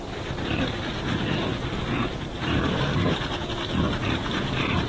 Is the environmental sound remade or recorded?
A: remade